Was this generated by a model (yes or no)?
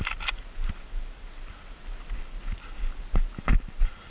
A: no